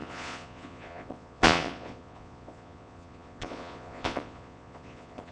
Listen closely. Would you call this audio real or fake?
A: fake